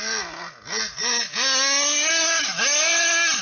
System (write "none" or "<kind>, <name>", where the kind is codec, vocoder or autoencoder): none